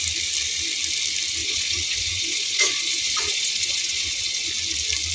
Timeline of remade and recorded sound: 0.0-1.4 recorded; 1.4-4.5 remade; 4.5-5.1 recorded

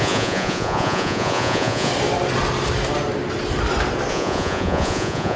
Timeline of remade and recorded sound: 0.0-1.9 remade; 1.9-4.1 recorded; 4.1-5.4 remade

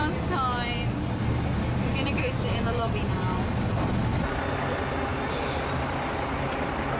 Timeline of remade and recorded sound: 0.0-7.0 recorded

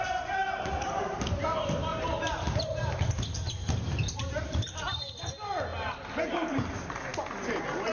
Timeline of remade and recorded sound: 0.0-1.9 recorded; 1.9-5.0 remade; 5.0-7.9 recorded

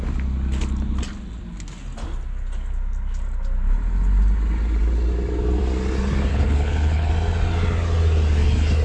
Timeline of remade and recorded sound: 0.0-6.3 recorded; 6.3-7.1 remade; 7.1-8.8 recorded